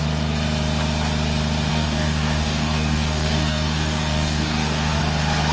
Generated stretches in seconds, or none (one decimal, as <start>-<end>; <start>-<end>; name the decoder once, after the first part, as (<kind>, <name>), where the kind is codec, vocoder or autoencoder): 1.7-5.0 (codec, DAC)